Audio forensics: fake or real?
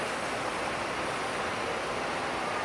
real